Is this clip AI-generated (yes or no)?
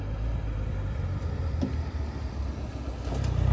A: no